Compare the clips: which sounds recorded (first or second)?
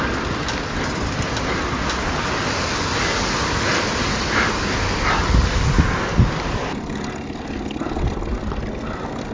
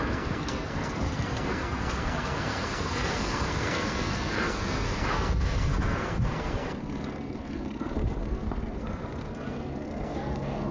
first